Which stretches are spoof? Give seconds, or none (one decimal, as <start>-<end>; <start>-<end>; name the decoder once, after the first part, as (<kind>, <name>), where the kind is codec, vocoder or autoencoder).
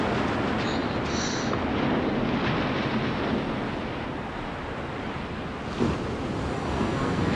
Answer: 6.5-7.4 (codec, SNAC)